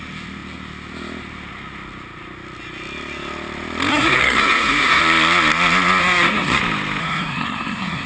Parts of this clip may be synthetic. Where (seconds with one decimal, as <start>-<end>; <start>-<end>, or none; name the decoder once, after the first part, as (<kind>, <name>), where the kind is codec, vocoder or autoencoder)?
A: 3.9-5.0 (codec, SNAC); 6.0-6.6; 7.0-8.1